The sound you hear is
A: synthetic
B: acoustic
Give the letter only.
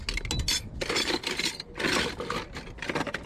B